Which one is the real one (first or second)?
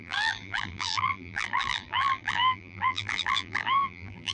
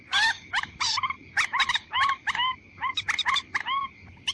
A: second